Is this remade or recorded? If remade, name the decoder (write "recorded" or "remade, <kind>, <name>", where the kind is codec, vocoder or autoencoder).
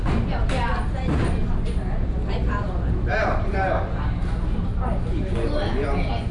recorded